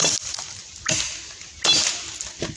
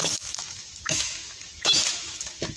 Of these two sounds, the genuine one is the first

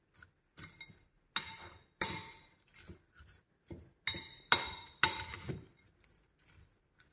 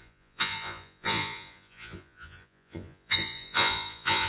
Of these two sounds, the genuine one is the first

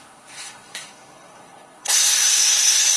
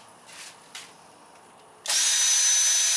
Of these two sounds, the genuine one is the second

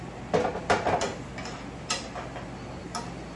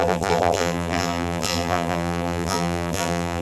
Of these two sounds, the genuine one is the first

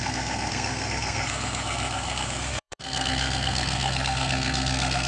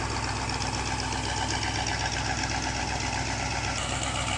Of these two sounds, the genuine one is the second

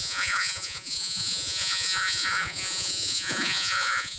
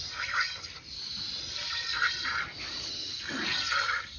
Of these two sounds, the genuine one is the second